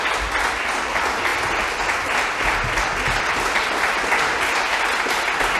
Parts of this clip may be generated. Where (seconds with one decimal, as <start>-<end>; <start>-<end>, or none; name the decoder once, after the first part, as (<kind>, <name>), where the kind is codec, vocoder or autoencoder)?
none